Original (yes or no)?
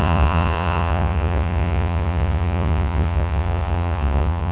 no